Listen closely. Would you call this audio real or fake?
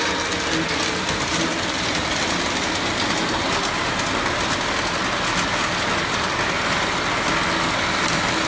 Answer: real